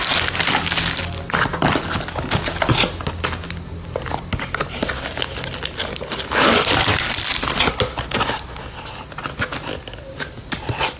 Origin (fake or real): real